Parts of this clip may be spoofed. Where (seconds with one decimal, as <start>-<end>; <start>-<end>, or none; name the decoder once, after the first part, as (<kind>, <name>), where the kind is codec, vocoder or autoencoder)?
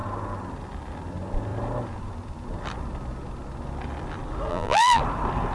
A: 4.5-5.0 (vocoder, BigVGAN v2)